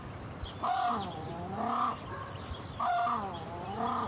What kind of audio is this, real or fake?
real